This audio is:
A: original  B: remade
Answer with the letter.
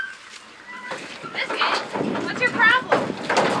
A